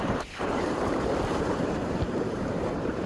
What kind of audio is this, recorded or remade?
remade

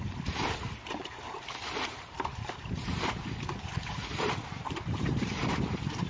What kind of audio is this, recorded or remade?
remade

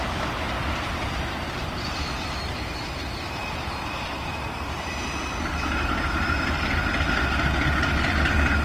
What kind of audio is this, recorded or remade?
recorded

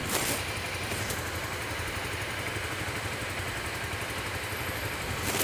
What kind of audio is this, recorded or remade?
recorded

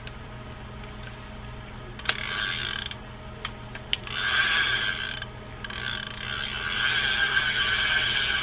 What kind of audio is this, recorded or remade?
remade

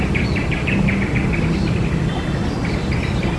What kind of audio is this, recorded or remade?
recorded